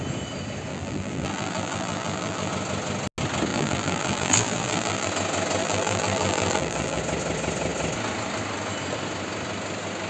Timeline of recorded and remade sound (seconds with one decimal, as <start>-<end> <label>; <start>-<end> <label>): 0.0-0.7 recorded; 0.7-2.5 remade; 2.5-3.5 recorded; 3.5-5.1 remade; 5.1-5.6 recorded; 5.6-7.0 remade; 7.0-10.1 recorded